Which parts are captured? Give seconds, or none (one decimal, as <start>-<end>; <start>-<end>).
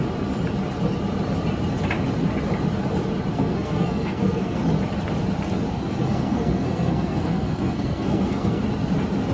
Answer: 0.0-3.3; 4.6-5.7; 8.6-9.3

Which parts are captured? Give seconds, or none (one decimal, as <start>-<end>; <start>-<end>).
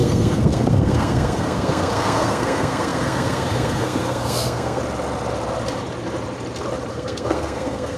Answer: 4.8-6.9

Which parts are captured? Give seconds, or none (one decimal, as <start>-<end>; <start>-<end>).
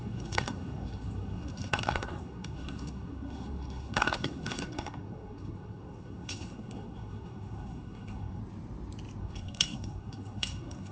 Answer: 8.4-9.2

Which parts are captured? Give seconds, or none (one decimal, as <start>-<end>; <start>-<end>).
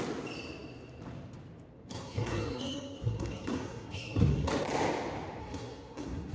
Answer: 0.0-1.9; 4.5-5.4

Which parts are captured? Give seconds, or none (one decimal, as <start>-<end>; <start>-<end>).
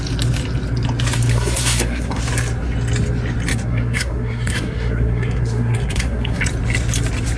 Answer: 0.0-1.3; 2.2-3.5; 6.4-7.4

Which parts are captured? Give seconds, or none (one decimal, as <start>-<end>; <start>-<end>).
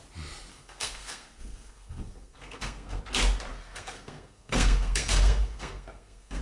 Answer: 0.0-0.5; 3.0-3.5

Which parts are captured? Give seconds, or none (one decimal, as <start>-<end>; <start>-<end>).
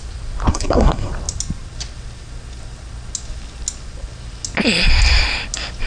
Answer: 0.0-0.5; 1.1-5.9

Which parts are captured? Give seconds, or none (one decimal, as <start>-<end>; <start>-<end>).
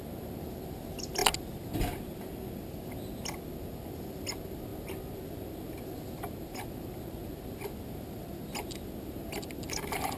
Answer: 0.0-10.2